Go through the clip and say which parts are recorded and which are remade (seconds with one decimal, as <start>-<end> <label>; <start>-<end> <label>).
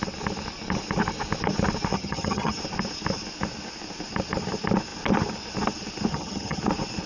0.0-1.9 recorded; 1.9-2.6 remade; 2.6-6.1 recorded; 6.1-6.6 remade; 6.6-7.1 recorded